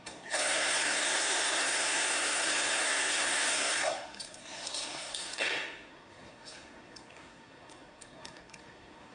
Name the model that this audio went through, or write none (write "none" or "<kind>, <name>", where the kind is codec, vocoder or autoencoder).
codec, SNAC